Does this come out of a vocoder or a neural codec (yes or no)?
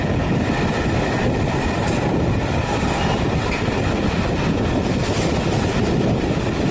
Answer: no